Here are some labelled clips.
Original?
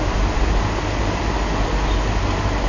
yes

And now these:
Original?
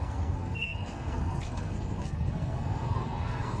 no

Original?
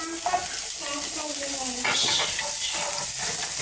yes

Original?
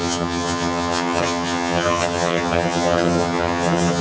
no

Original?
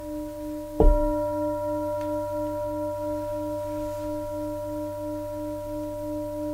yes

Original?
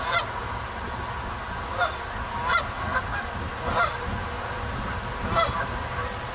yes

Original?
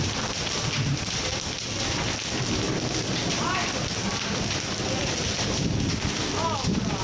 yes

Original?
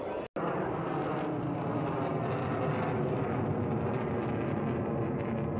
yes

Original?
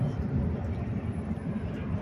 yes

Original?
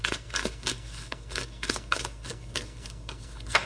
no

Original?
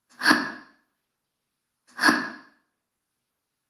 yes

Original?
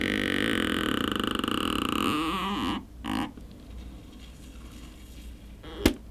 yes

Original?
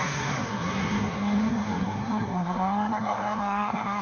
no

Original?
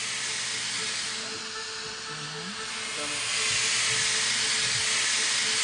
yes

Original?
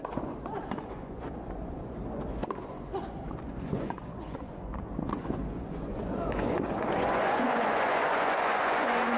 no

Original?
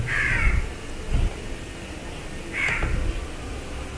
yes